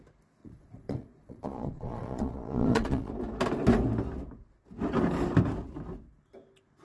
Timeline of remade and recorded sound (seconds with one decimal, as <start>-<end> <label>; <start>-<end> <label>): 0.0-0.4 recorded; 0.4-3.1 remade; 3.1-6.8 recorded